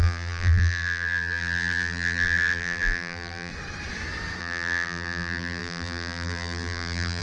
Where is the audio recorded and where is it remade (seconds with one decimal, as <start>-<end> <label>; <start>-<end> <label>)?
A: 0.0-3.5 remade; 3.5-4.4 recorded; 4.4-7.2 remade